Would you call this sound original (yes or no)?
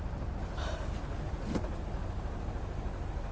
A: yes